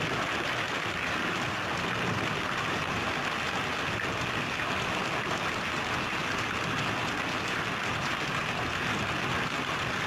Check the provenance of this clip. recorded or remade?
recorded